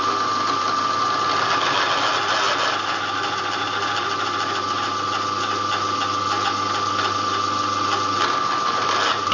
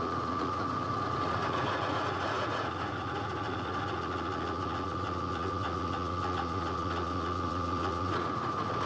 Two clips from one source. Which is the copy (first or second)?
second